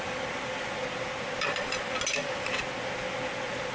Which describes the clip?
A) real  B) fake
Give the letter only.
A